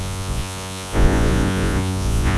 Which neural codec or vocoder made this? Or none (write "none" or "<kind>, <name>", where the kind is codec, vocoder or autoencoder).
vocoder, Vocos